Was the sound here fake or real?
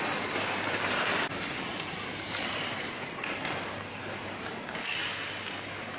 real